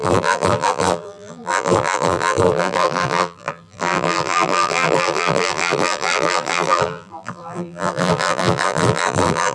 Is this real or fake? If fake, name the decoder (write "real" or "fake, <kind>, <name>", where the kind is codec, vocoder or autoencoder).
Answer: fake, vocoder, BigVGAN v2